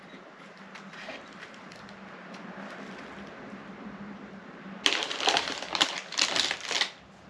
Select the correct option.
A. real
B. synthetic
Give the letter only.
A